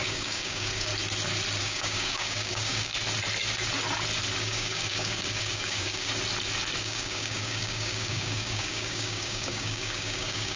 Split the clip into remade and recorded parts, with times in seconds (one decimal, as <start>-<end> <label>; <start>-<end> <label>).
0.0-0.9 remade; 0.9-1.6 recorded; 1.6-2.9 remade; 2.9-4.4 recorded; 4.4-6.1 remade; 6.1-6.8 recorded; 6.8-10.6 remade